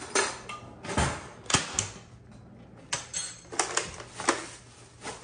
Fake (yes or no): no